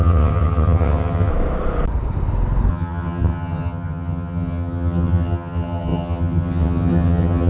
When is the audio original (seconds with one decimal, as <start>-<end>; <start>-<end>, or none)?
1.3-2.7